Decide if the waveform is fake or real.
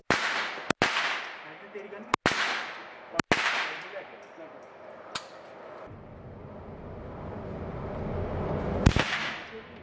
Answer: real